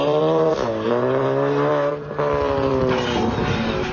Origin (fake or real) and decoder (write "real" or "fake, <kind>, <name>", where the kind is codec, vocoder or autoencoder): real